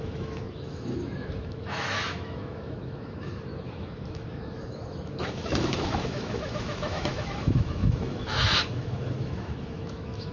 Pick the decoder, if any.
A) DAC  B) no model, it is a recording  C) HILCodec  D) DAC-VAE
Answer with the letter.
D